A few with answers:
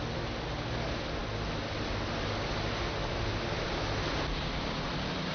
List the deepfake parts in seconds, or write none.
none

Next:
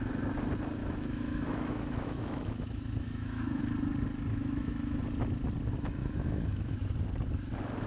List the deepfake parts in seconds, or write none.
0.8-3.6 (autoencoder, DAC-VAE); 4.3-5.0; 6.0-6.9

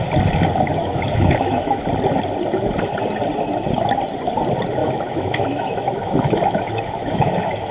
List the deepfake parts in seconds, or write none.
0.8-1.9 (autoencoder, DAC-VAE); 4.8-7.7

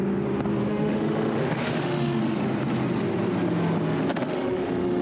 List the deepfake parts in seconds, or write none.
0.7-2.2 (autoencoder, DAC-VAE); 4.1-5.0